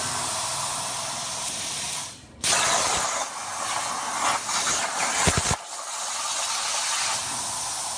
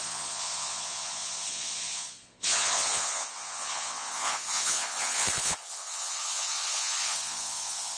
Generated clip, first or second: second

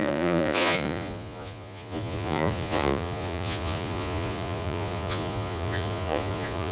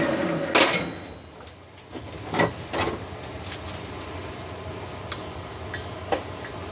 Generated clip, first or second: first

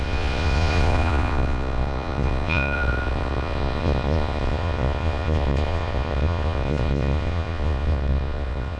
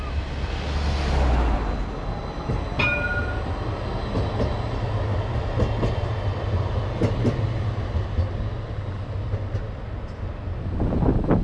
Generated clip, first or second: first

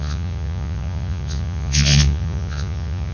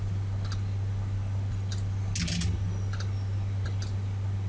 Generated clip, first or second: first